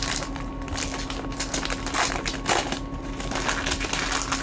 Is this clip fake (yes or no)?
no